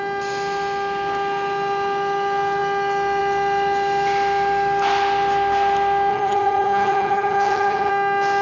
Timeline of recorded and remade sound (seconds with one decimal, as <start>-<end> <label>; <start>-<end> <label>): 0.0-6.1 recorded; 6.1-7.9 remade; 7.9-8.4 recorded